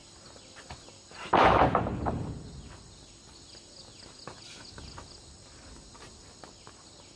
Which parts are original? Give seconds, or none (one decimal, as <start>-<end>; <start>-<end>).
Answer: 0.0-7.2